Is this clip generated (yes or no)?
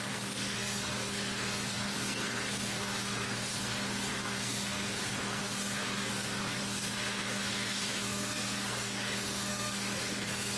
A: yes